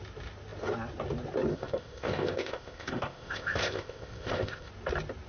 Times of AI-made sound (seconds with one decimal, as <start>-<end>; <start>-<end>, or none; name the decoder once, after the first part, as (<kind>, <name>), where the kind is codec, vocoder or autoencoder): 1.5-4.7 (codec, ZipCodec)